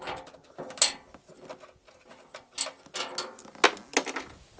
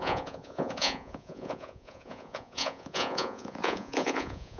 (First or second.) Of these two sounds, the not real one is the second